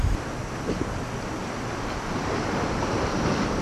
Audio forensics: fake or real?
real